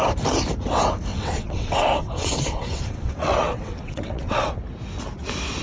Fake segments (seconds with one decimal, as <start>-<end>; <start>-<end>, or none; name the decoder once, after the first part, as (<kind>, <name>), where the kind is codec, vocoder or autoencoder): 1.1-4.5 (vocoder, WaveNeXt)